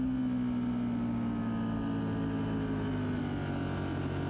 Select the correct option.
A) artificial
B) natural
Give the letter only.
B